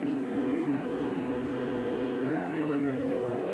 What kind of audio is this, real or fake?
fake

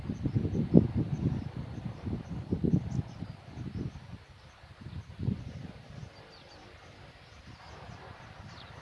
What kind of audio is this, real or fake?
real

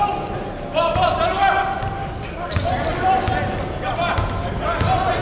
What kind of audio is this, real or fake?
real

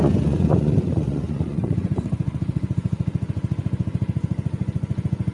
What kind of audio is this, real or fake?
fake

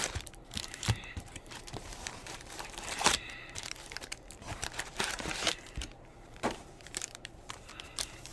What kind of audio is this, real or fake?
fake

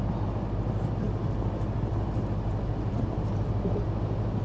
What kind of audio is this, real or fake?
real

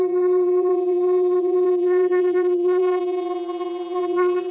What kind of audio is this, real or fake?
fake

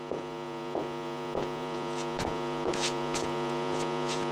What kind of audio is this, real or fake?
fake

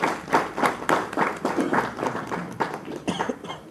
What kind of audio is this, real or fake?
real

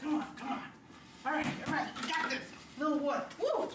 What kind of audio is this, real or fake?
real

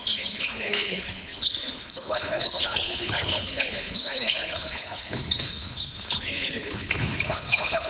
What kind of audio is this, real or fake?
fake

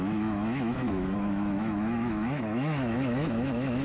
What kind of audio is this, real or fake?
fake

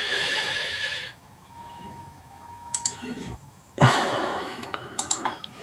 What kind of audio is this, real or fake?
fake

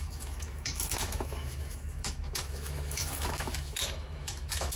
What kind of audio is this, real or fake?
fake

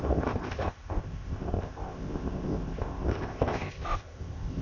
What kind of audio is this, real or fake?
fake